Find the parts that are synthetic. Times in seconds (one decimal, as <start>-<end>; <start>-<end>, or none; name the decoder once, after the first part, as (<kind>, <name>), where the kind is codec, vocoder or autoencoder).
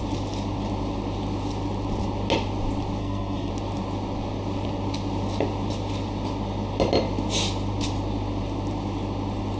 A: 3.0-3.5 (codec, SNAC)